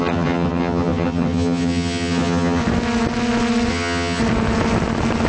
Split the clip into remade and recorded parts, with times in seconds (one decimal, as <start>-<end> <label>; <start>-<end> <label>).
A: 0.0-2.6 remade; 2.6-3.7 recorded; 3.7-4.2 remade; 4.2-5.3 recorded